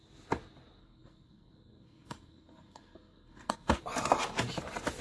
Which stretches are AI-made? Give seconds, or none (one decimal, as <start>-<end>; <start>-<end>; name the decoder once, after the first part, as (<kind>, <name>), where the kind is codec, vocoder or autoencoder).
0.8-3.8 (codec, SNAC)